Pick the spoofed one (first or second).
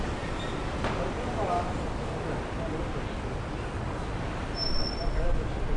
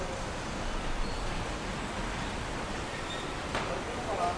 second